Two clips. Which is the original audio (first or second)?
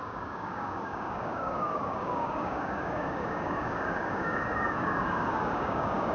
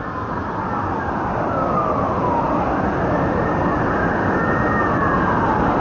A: second